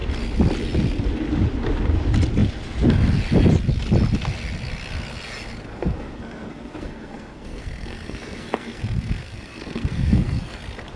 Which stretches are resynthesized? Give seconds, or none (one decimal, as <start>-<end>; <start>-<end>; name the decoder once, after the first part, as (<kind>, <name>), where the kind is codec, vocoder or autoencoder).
5.7-10.6 (codec, SNAC)